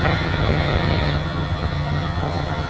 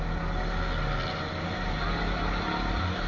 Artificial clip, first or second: first